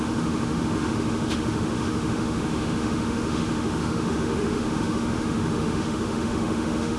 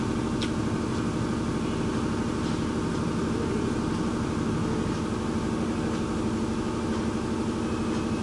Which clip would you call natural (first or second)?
second